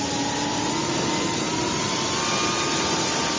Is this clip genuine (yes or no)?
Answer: yes